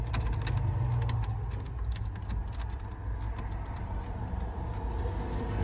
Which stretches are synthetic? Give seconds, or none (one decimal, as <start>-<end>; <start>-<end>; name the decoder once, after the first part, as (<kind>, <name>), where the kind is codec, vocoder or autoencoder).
none